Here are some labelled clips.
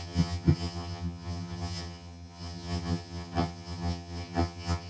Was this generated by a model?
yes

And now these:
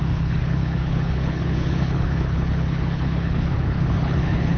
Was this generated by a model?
yes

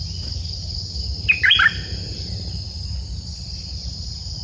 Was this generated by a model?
no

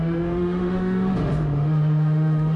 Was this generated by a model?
yes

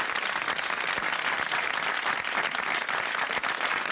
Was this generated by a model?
no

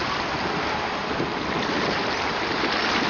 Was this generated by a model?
no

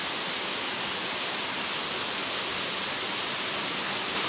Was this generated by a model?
no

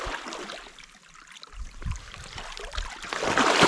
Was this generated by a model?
no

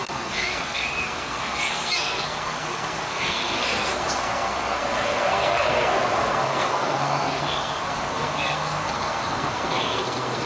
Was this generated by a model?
yes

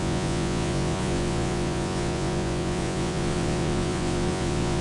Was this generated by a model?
yes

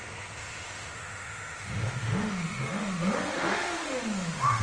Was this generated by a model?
yes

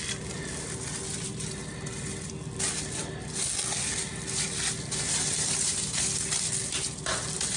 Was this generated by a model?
no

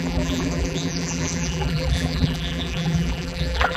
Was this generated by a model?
yes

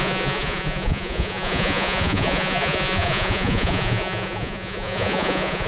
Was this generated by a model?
yes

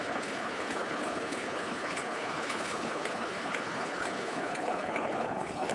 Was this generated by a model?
yes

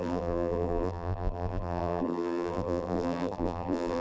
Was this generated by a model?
yes